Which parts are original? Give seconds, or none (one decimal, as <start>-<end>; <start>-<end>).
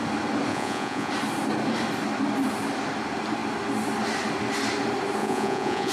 0.0-0.5; 1.1-5.2